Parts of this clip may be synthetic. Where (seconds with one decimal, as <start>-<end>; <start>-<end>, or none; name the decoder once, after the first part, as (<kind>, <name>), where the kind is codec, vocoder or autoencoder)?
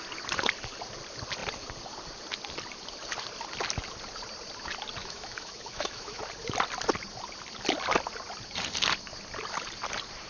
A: 5.0-6.2 (autoencoder, DAC-VAE)